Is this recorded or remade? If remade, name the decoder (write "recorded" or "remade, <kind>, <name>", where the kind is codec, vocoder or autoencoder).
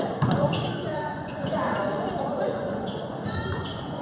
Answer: remade, vocoder, Vocos